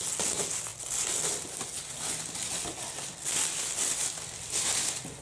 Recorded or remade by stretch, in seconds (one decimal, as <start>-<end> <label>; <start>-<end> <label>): 0.0-5.2 recorded